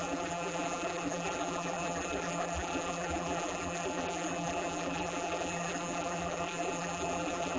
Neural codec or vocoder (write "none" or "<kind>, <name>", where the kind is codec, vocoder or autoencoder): vocoder, BigVGAN v2